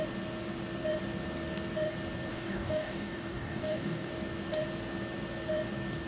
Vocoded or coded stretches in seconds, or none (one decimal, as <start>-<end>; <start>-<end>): 2.3-4.1

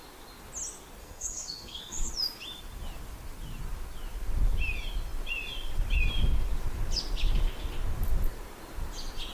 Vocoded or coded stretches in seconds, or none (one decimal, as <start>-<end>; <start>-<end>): 1.0-2.1

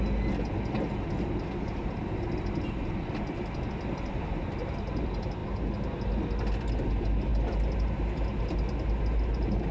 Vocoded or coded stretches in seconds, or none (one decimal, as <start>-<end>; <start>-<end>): none